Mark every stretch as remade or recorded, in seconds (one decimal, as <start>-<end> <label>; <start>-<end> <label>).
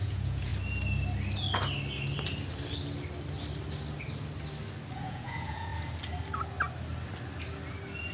0.0-0.5 remade; 0.5-4.9 recorded; 4.9-5.7 remade; 5.7-8.1 recorded